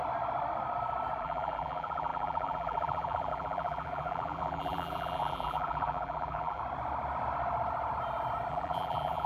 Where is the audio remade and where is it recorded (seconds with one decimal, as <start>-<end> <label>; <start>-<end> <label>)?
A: 0.0-1.2 recorded; 1.2-6.6 remade; 6.6-8.5 recorded; 8.5-9.3 remade